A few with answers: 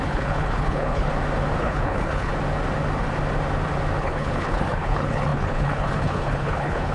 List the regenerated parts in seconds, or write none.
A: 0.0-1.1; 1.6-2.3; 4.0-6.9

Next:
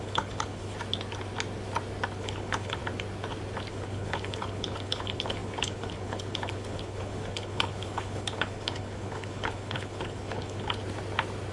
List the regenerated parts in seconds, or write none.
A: 0.0-0.7; 2.2-2.8; 3.7-10.8

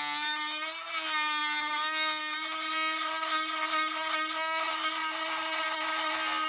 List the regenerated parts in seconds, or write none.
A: none

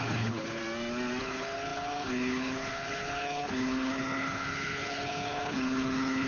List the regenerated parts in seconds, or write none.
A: 0.0-0.6; 1.2-6.3